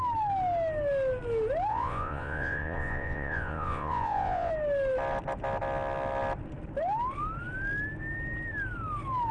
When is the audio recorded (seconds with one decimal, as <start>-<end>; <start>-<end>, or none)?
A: 0.0-1.7; 4.5-9.3